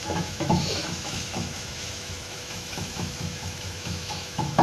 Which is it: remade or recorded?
remade